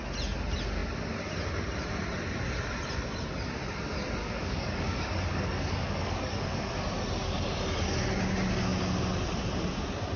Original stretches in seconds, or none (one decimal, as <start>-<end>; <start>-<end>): 0.0-4.2; 6.7-10.2